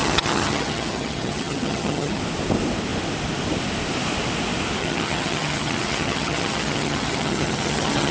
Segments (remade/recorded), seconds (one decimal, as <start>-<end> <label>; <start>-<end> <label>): 0.0-2.2 remade; 2.2-4.8 recorded; 4.8-8.1 remade